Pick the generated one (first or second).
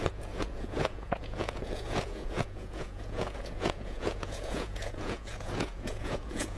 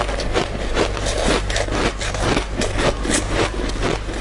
first